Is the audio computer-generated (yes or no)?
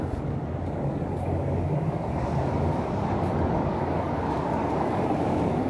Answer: yes